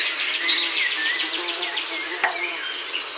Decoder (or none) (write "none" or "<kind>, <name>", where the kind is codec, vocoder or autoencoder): none